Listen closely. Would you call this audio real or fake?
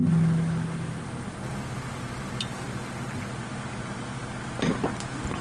real